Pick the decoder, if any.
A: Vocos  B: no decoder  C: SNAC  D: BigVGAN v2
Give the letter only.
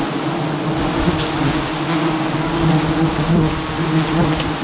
B